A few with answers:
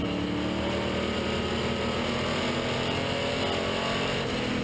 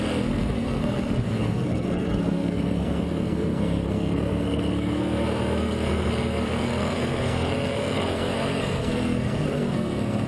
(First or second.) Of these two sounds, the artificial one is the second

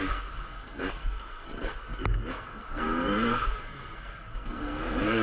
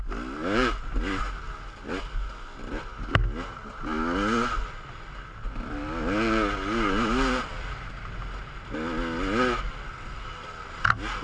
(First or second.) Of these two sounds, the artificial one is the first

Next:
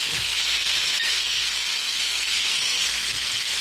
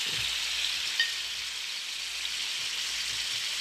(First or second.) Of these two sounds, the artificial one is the first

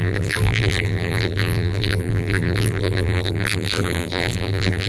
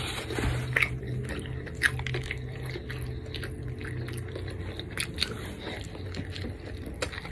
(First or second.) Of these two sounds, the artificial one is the first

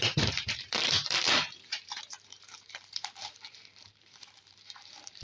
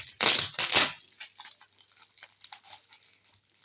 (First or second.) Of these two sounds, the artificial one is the first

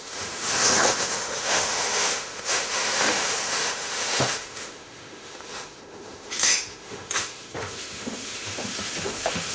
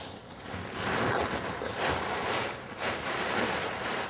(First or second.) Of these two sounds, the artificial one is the first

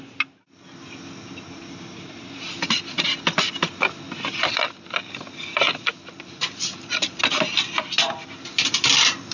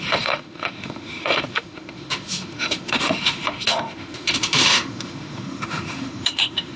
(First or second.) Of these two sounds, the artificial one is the second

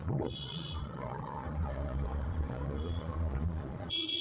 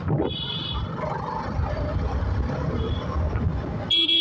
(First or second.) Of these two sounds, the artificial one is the first